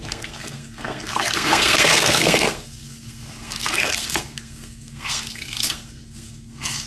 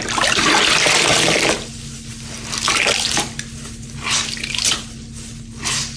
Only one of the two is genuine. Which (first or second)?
second